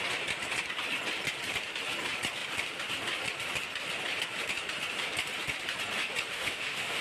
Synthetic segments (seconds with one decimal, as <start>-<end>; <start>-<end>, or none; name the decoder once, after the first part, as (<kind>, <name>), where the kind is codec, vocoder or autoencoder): 6.3-7.0 (autoencoder, DAC-VAE)